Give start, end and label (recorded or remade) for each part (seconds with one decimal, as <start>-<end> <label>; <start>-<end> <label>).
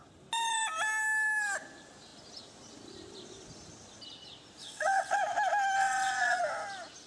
0.0-4.6 recorded; 4.6-5.2 remade; 5.2-5.8 recorded; 5.8-6.4 remade; 6.4-7.1 recorded